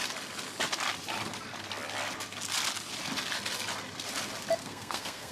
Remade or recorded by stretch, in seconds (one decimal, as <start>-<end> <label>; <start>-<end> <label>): 0.0-4.6 recorded; 4.6-5.3 remade